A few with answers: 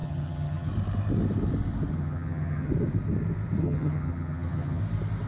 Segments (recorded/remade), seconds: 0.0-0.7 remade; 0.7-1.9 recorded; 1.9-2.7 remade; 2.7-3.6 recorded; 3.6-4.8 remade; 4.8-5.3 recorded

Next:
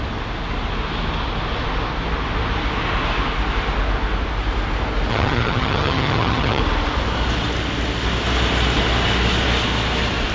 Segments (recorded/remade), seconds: 0.0-5.1 recorded; 5.1-6.6 remade; 6.6-10.3 recorded

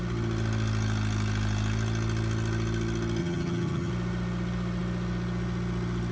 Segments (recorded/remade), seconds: 0.0-3.2 recorded; 3.2-3.9 remade; 3.9-6.1 recorded

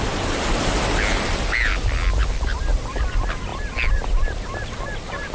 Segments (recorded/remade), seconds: 0.0-5.3 recorded

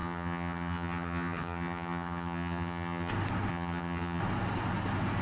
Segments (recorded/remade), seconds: 0.0-3.1 remade; 3.1-3.5 recorded; 3.5-4.2 remade; 4.2-5.2 recorded

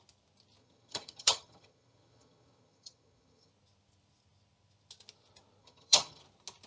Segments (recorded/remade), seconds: 0.0-0.6 recorded; 0.6-3.5 remade; 3.5-5.6 recorded; 5.6-6.2 remade; 6.2-6.7 recorded